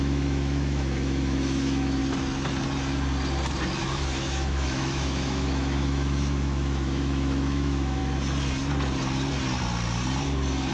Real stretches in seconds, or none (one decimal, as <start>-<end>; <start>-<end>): 2.0-3.8; 8.0-10.7